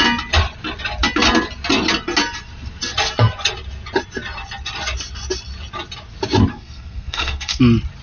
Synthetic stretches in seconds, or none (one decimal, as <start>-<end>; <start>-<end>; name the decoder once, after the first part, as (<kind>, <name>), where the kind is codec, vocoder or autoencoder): 6.5-7.6 (codec, SNAC)